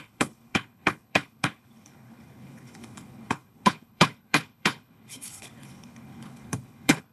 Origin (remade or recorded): remade